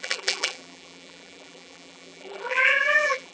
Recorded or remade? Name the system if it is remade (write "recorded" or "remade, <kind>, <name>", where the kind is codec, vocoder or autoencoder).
remade, vocoder, BigVGAN v2